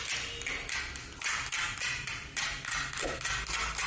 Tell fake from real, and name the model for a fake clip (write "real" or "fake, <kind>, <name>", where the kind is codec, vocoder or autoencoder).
real